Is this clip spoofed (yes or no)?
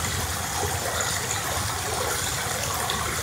no